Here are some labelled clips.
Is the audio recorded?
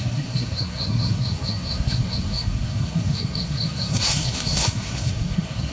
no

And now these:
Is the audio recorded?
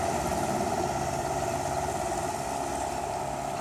yes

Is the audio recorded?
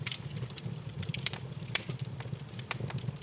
no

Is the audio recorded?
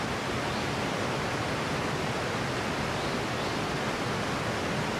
yes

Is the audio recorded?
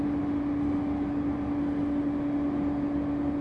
yes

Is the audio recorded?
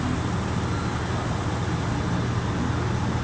yes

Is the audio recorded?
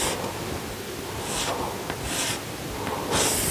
yes